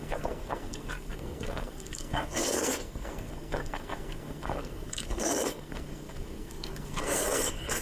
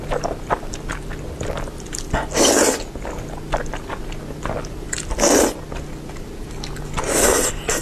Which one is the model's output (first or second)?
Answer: first